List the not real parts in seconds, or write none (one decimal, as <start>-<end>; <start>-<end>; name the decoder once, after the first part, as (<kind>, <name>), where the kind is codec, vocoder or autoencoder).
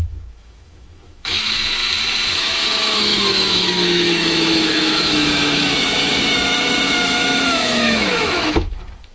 0.0-1.8 (autoencoder, DAC-VAE); 2.3-9.1